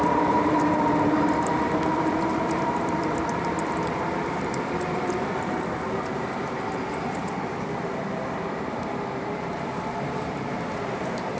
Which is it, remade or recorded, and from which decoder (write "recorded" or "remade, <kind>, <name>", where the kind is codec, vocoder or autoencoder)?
remade, vocoder, BigVGAN v2